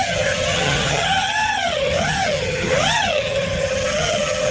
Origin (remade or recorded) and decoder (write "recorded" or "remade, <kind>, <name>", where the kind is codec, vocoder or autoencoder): remade, vocoder, HiFi-GAN